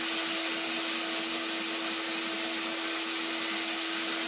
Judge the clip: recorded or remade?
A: recorded